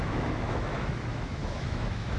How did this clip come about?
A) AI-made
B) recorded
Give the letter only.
A